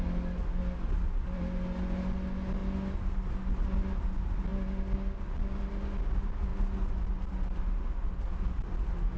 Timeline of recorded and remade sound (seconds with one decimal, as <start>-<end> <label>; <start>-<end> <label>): 0.0-9.2 recorded